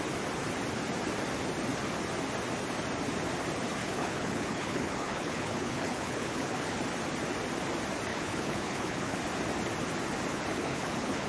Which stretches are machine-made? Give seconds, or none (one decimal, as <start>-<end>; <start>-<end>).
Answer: 3.8-6.8; 8.1-9.2; 10.3-11.3